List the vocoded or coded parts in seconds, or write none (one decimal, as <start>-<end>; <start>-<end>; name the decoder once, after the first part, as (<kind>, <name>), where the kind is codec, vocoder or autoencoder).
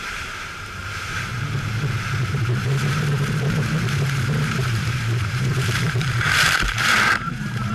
0.0-1.3 (vocoder, BigVGAN v2); 2.3-7.7